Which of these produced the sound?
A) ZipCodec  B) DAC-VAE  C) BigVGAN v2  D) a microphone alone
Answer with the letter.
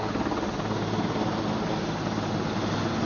D